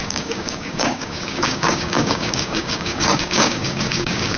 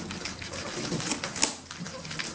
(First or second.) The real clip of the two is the second